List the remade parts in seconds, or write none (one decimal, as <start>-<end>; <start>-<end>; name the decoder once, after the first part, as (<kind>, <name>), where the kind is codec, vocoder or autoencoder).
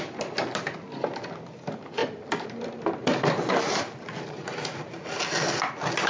2.0-5.0 (vocoder, BigVGAN v2)